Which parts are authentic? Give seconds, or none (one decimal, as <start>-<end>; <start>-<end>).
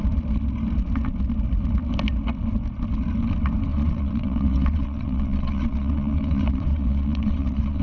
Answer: 0.0-3.7